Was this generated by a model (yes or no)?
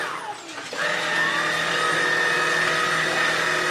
no